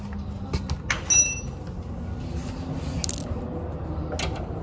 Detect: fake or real real